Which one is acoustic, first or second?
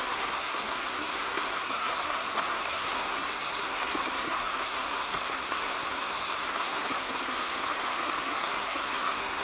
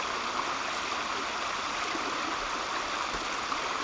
second